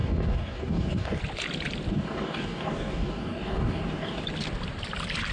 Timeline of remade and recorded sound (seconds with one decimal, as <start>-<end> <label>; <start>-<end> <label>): 0.0-1.2 remade; 1.2-1.9 recorded; 1.9-4.2 remade; 4.2-5.3 recorded